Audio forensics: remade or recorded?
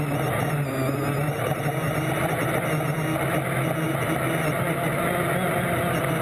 recorded